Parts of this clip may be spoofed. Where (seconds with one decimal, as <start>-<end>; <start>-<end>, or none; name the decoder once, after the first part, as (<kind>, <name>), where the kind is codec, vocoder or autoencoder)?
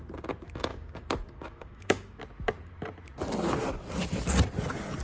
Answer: 0.7-2.2 (codec, DAC)